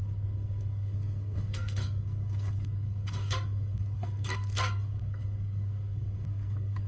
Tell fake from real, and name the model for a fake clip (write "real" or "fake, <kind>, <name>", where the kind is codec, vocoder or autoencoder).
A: fake, codec, SNAC